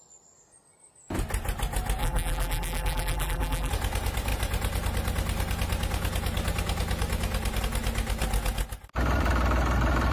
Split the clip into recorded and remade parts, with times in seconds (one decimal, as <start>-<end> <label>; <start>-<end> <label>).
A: 0.0-2.0 recorded; 2.0-3.7 remade; 3.7-10.1 recorded